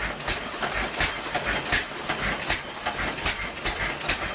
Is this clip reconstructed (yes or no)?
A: no